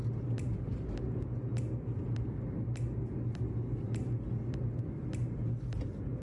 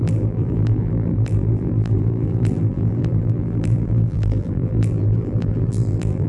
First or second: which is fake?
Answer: second